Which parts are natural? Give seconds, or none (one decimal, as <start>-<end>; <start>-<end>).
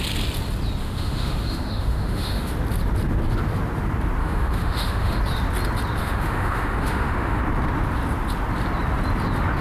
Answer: 0.0-0.8; 2.5-4.2; 5.2-6.0; 7.4-9.6